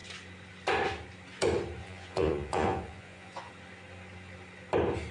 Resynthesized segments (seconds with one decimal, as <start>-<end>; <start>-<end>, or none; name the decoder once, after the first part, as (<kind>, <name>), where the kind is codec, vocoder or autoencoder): 1.8-3.5 (vocoder, Vocos)